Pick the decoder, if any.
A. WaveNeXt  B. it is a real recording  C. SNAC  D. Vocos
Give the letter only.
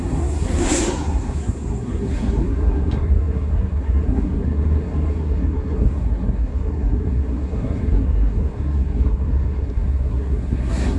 C